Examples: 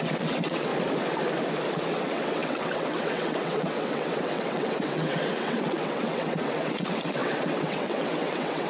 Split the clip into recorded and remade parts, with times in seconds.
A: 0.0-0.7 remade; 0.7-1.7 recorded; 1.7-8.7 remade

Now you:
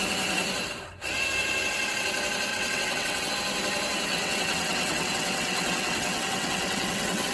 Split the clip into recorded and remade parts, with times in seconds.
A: 0.0-2.5 recorded; 2.5-3.3 remade; 3.3-4.1 recorded; 4.1-7.3 remade

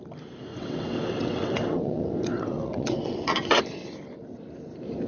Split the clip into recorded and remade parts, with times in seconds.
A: 0.0-0.5 recorded; 0.5-3.6 remade; 3.6-5.1 recorded

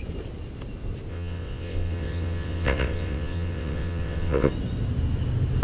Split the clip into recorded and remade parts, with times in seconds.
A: 0.0-1.1 recorded; 1.1-4.5 remade; 4.5-5.6 recorded

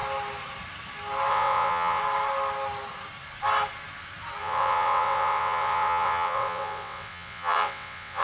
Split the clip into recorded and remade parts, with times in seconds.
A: 0.0-1.3 recorded; 1.3-2.0 remade; 2.0-4.4 recorded; 4.4-8.2 remade

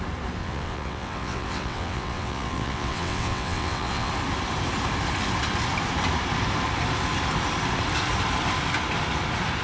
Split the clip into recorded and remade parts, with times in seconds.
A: 0.0-0.4 recorded; 0.4-4.1 remade; 4.1-9.6 recorded

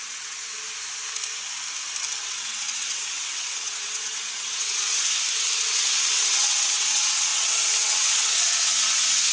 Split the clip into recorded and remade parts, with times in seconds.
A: 0.0-0.5 remade; 0.5-2.2 recorded; 2.2-5.0 remade; 5.0-5.7 recorded; 5.7-9.3 remade

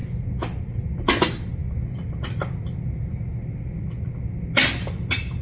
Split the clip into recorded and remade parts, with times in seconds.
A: 0.0-5.4 recorded